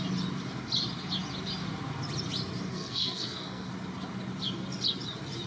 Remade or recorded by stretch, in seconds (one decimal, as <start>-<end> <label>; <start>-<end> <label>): 0.0-2.7 recorded; 2.7-3.7 remade; 3.7-5.5 recorded